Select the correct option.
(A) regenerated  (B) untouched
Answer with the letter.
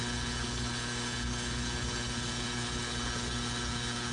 A